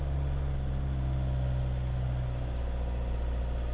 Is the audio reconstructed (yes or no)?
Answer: no